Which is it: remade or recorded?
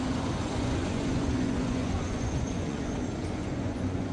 remade